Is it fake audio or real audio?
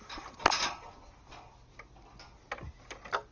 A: real